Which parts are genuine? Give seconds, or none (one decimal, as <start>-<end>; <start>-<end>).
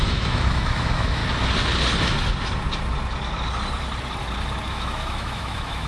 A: 1.2-4.7